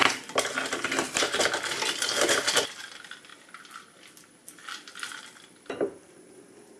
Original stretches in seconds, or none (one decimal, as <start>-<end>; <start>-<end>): 1.4-3.3; 6.1-6.8